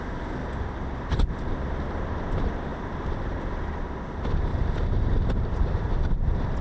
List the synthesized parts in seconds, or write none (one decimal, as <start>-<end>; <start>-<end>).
4.5-5.9